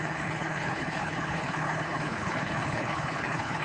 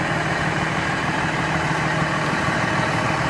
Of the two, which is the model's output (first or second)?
first